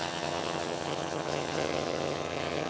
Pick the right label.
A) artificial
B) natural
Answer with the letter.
A